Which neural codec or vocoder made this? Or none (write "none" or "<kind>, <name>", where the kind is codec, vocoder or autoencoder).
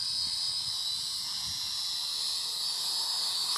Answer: none